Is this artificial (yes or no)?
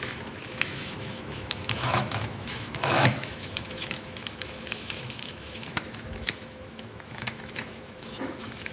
yes